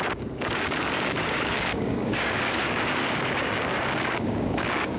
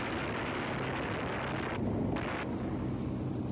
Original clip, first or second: second